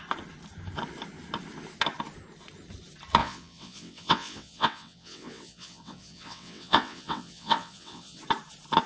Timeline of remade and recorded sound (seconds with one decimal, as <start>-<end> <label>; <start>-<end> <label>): 0.0-3.2 recorded; 3.2-8.2 remade; 8.2-8.9 recorded